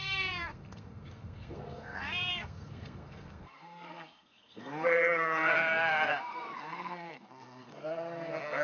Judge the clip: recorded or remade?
remade